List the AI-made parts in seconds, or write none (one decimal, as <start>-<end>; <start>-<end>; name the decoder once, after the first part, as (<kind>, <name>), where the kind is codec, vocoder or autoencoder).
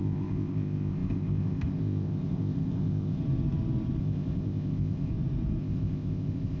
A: 0.0-3.2 (codec, ZipCodec); 4.0-5.1; 5.6-6.6